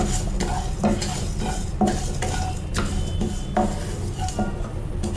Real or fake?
real